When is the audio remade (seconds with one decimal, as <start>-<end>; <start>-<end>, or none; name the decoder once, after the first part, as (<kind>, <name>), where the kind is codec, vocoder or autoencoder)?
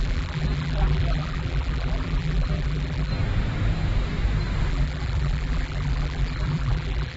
0.0-3.1 (vocoder, BigVGAN v2); 4.7-7.2